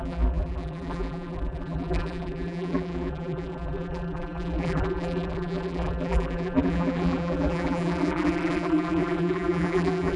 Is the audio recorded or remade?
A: remade